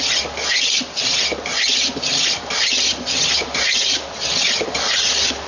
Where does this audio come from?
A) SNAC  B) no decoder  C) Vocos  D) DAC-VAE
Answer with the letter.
B